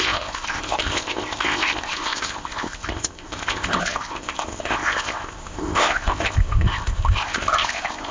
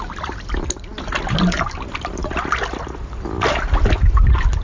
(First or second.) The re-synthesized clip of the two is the first